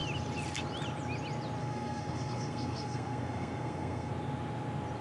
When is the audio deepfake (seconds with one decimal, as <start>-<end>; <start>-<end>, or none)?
1.6-4.1